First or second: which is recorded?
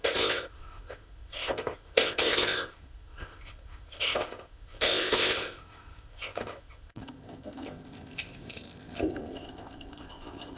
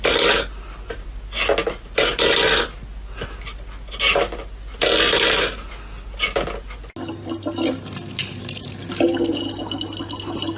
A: second